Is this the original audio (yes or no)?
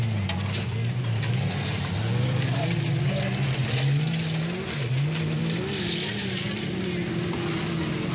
yes